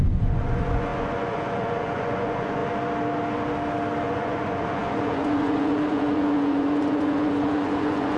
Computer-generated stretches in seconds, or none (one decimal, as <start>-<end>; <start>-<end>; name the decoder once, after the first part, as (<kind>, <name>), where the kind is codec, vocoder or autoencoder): 0.0-2.6 (vocoder, Vocos); 4.0-8.2